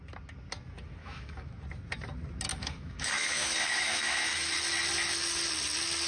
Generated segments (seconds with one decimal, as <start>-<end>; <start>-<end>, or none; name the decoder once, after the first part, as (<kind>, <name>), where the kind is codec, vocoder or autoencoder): 1.0-1.6 (autoencoder, DAC-VAE); 2.5-4.5